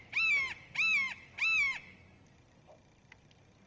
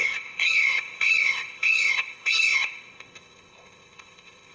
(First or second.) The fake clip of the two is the second